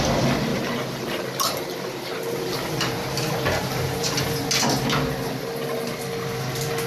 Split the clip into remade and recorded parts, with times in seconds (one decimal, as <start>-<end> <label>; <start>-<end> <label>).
0.0-0.5 recorded; 0.5-4.2 remade; 4.2-6.9 recorded